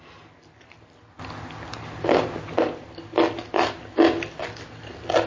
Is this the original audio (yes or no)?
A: yes